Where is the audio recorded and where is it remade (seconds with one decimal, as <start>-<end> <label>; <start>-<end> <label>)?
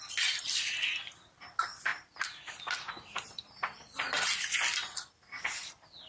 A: 0.0-1.9 recorded; 1.9-2.5 remade; 2.5-6.1 recorded